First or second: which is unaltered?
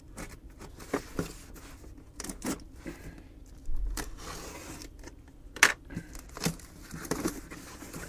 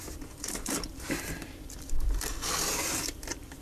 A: first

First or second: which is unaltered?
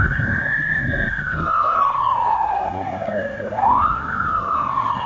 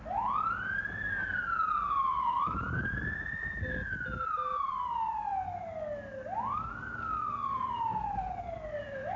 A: second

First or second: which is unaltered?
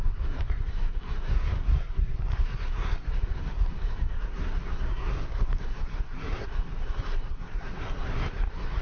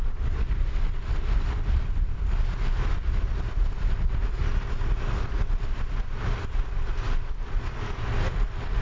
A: second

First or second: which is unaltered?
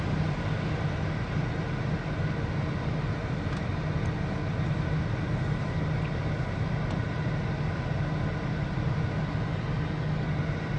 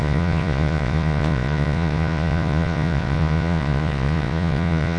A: first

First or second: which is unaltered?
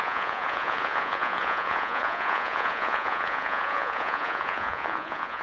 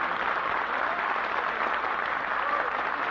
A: second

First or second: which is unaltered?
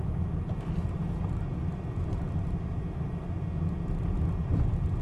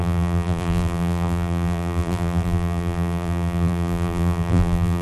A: first